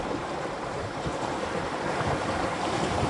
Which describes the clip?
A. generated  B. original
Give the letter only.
A